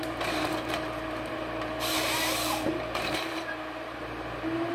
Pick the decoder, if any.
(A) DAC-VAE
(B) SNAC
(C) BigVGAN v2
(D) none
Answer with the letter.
C